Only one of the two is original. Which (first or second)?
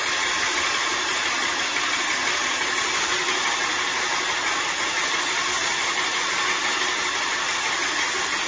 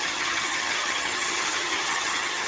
first